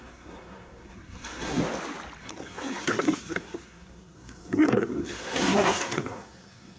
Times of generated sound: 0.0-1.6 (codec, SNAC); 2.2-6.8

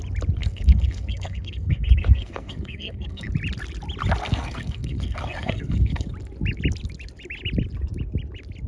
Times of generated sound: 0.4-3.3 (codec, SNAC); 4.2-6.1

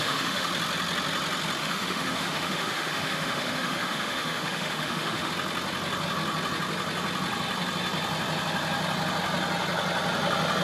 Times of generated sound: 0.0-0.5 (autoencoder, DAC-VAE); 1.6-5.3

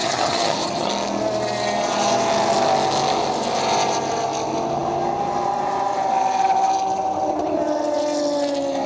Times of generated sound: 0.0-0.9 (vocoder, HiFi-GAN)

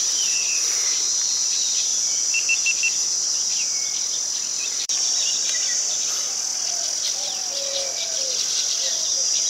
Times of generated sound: 0.0-9.5 (vocoder, BigVGAN v2)